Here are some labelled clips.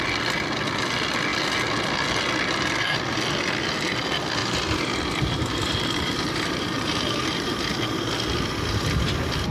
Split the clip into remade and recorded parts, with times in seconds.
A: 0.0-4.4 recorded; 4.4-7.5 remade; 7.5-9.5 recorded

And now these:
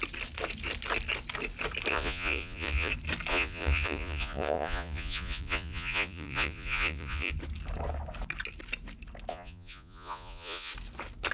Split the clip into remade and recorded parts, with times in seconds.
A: 0.0-1.9 recorded; 1.9-2.9 remade; 2.9-3.3 recorded; 3.3-7.3 remade; 7.3-9.3 recorded; 9.3-10.7 remade; 10.7-11.3 recorded

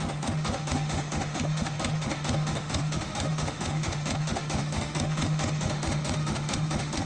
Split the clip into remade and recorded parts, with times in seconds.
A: 0.0-7.1 remade

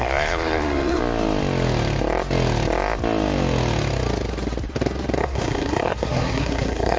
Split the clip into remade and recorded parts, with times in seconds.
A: 0.0-1.0 remade; 1.0-5.2 recorded; 5.2-7.0 remade